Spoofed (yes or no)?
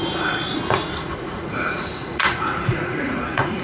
yes